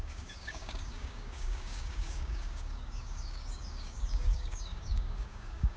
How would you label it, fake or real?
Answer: fake